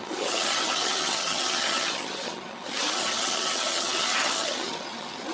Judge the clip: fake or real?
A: fake